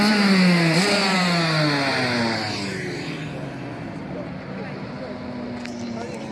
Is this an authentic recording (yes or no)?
yes